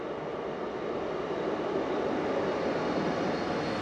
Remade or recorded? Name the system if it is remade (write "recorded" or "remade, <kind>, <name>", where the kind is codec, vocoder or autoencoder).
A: recorded